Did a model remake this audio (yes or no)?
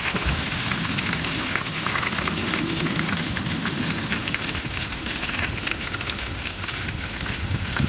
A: yes